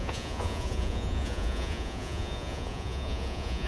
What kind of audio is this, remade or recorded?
remade